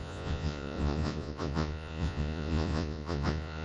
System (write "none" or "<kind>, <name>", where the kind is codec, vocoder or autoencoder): vocoder, Vocos